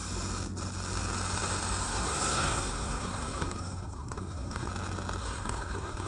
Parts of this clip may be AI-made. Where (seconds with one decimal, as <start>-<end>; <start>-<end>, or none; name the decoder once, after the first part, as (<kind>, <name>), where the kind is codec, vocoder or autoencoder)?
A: 1.8-4.7 (codec, SNAC); 5.2-6.1